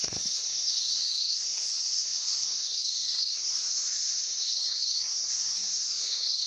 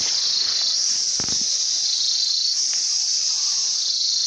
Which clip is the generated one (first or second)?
first